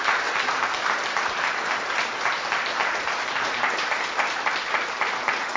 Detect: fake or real fake